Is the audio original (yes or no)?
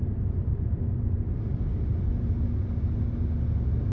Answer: yes